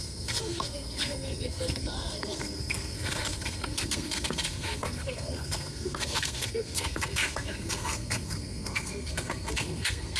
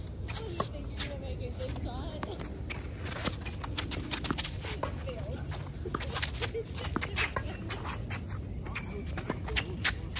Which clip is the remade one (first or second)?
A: first